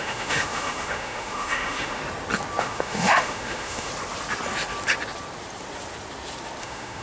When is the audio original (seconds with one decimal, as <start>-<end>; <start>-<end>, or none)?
2.0-2.6; 3.9-6.6